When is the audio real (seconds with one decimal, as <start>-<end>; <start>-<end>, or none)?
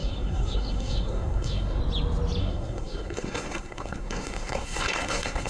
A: 1.8-2.4